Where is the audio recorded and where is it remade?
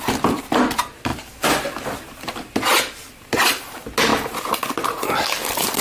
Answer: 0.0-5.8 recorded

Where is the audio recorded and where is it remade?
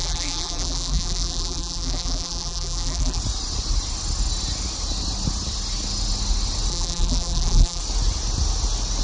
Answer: 0.0-3.2 remade; 3.2-6.7 recorded; 6.7-7.8 remade; 7.8-9.0 recorded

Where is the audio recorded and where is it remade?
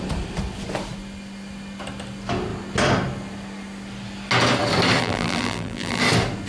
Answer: 0.0-5.0 recorded; 5.0-6.0 remade; 6.0-6.5 recorded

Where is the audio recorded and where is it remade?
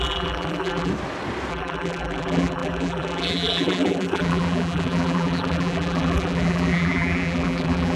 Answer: 0.0-0.9 remade; 0.9-1.5 recorded; 1.5-8.0 remade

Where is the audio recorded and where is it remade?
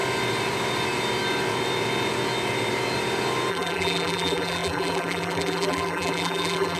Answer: 0.0-3.5 recorded; 3.5-6.8 remade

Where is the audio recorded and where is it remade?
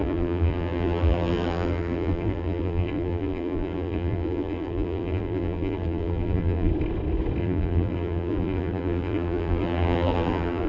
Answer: 0.0-6.7 remade; 6.7-7.4 recorded; 7.4-10.7 remade